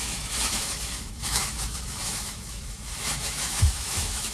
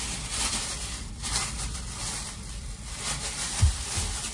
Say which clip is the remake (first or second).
first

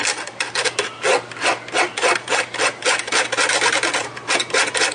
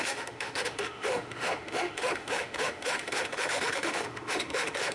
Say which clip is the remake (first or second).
second